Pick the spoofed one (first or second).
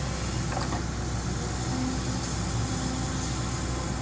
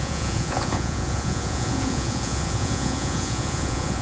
second